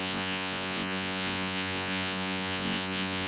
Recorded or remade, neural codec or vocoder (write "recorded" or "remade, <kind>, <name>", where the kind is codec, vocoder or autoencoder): remade, vocoder, Vocos